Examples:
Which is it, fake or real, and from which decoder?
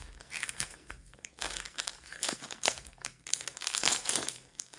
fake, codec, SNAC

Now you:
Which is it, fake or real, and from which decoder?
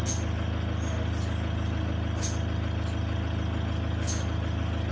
real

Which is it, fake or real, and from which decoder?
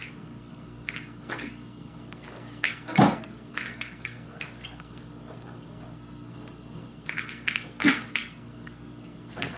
fake, codec, SNAC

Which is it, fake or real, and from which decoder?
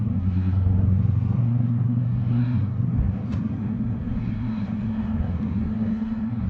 fake, codec, SNAC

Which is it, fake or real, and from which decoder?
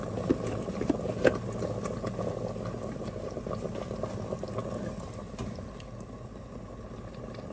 real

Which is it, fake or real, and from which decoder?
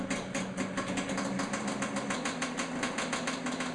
real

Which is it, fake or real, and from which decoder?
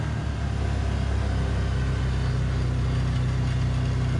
real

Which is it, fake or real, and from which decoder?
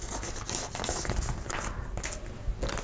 real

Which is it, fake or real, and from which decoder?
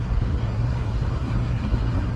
fake, codec, SNAC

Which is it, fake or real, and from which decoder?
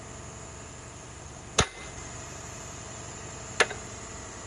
real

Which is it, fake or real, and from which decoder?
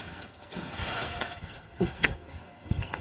fake, codec, SNAC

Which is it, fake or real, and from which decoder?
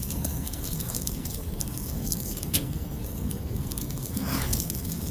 fake, codec, SNAC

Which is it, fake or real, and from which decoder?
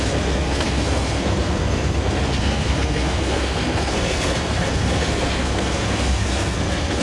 fake, codec, SNAC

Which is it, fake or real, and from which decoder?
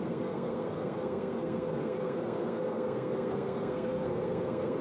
fake, codec, SNAC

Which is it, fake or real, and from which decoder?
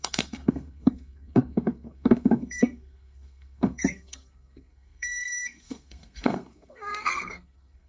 fake, codec, SNAC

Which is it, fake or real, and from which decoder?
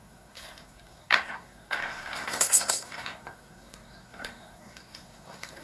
fake, codec, SNAC